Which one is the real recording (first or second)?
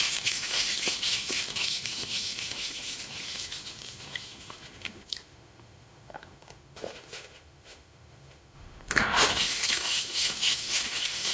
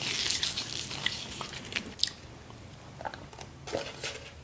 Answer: second